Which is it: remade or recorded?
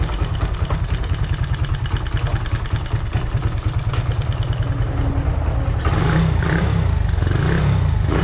recorded